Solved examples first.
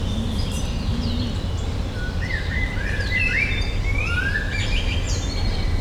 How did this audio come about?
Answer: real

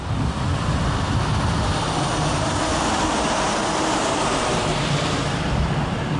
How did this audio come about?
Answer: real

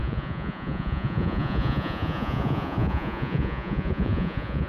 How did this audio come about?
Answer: fake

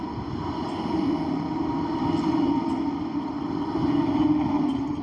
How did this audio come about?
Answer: real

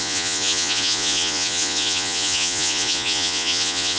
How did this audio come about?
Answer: fake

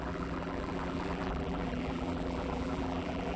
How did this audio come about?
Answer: fake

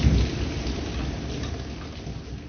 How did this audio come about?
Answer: real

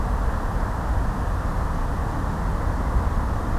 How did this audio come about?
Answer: real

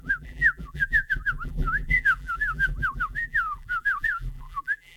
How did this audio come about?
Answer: fake